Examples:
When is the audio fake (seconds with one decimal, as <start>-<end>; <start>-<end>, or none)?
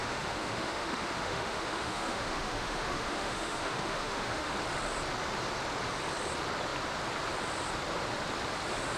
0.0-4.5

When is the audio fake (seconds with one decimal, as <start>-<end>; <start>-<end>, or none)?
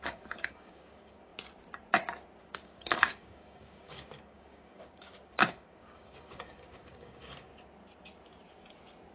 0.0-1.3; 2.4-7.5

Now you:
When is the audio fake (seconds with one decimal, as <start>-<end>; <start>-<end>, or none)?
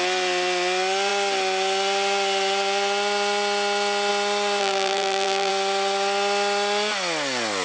4.6-5.5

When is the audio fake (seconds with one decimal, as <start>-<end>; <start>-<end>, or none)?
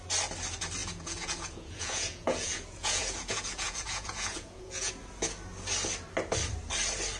0.8-4.9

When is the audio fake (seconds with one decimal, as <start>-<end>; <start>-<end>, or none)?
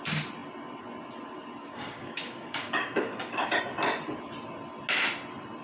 1.7-3.6